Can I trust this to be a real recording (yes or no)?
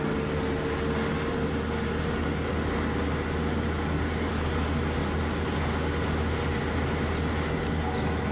yes